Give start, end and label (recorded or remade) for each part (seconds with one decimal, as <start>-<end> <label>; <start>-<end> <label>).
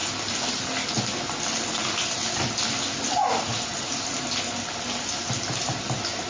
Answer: 0.0-6.3 recorded